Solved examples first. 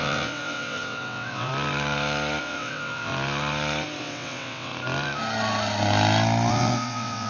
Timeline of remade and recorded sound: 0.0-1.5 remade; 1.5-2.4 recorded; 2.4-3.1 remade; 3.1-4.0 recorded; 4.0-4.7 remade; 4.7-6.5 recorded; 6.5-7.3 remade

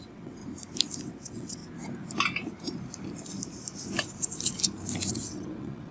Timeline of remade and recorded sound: 0.0-0.4 remade; 0.4-1.1 recorded; 1.1-1.6 remade; 1.6-5.1 recorded; 5.1-5.9 remade

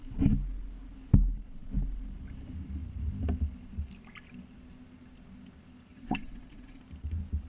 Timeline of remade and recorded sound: 0.0-5.9 recorded; 5.9-6.8 remade; 6.8-7.5 recorded

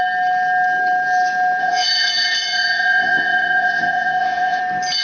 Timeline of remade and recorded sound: 0.0-1.6 recorded; 1.6-4.6 remade; 4.6-5.0 recorded

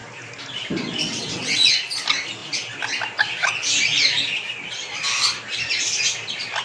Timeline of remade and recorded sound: 0.0-1.0 recorded; 1.0-1.7 remade; 1.7-6.6 recorded